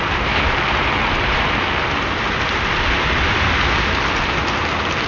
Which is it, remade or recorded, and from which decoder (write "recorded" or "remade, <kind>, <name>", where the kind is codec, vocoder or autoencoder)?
recorded